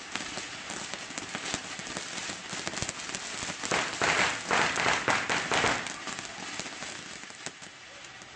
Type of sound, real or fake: real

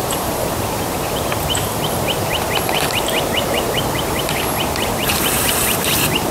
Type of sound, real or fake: fake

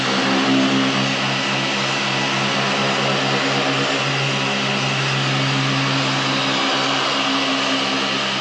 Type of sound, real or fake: real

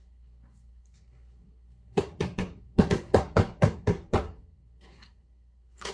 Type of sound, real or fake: fake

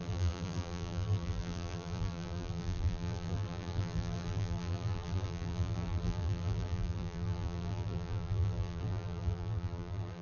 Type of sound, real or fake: fake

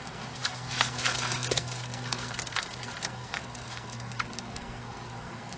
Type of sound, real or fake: fake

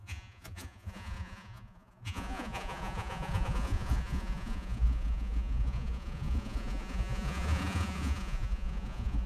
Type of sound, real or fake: fake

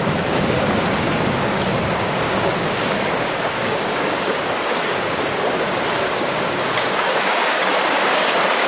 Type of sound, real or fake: fake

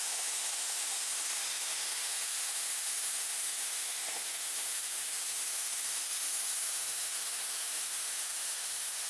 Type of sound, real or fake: fake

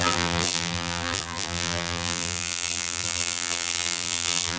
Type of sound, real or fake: fake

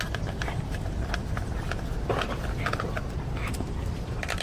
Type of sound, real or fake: real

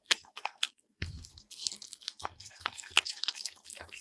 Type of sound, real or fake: fake